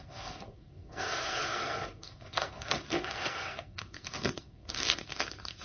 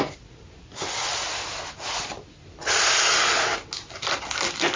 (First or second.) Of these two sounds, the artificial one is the first